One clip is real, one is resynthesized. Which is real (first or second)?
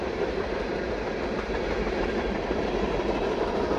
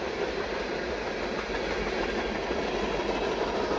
second